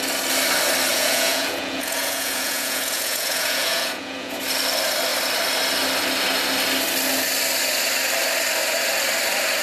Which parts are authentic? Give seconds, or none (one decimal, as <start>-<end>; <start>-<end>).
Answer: 0.0-0.9; 4.4-9.6